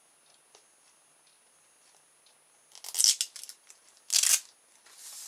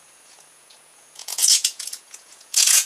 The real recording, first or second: first